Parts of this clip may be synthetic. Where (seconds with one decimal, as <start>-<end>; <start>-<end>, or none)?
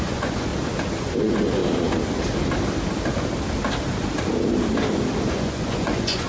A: 0.0-0.5; 1.0-1.6; 5.3-6.3